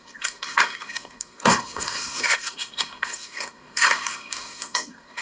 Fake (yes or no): yes